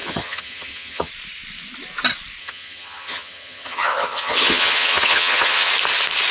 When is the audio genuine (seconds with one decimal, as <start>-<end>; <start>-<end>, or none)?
1.1-2.4; 5.7-6.3